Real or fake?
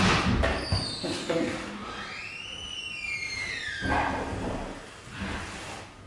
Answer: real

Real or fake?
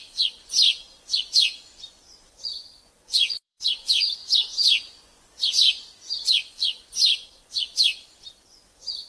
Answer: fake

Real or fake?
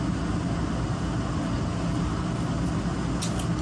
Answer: real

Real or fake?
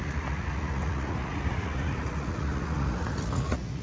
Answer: fake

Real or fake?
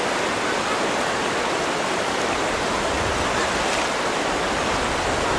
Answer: real